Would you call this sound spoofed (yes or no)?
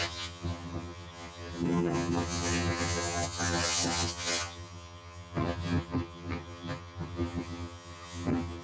yes